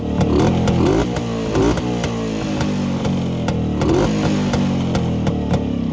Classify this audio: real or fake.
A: real